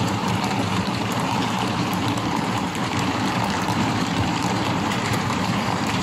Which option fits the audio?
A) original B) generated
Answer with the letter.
B